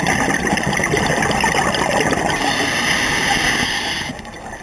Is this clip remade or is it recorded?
recorded